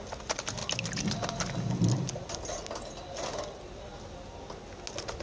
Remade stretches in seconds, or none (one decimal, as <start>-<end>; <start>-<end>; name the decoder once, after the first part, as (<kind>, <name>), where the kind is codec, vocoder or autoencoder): none